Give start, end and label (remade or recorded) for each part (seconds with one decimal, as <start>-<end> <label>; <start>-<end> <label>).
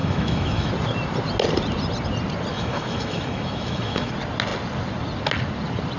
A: 0.0-0.7 remade; 0.7-2.5 recorded; 2.5-4.1 remade; 4.1-6.0 recorded